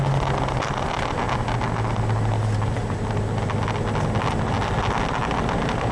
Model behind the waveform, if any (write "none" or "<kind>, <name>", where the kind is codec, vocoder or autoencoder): none